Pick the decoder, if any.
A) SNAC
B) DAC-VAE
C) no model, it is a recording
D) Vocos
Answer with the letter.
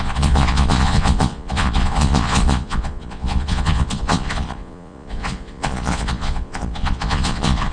D